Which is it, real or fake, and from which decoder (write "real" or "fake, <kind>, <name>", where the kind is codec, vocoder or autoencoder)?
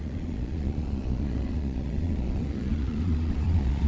fake, vocoder, Vocos